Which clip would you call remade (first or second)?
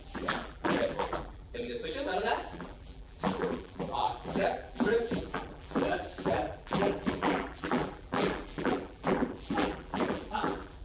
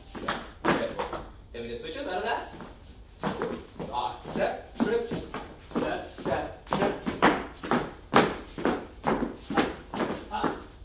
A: first